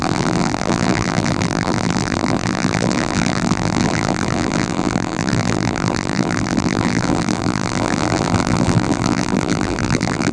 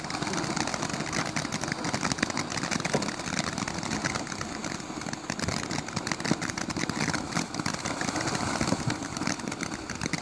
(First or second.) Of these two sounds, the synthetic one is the first